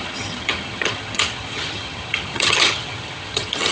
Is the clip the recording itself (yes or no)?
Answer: no